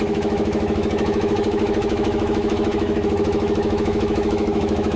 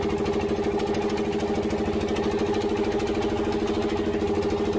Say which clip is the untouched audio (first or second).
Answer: second